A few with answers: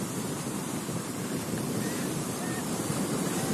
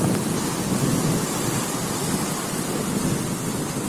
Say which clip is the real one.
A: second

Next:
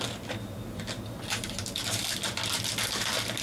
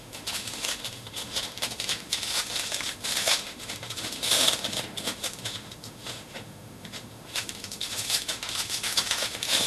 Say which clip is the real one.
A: first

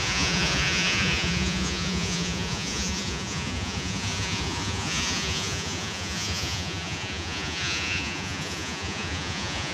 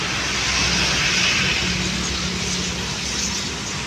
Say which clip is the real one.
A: second